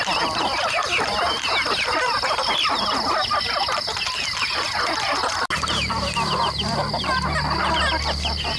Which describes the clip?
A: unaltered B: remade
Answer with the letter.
A